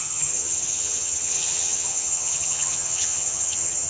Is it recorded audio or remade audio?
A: remade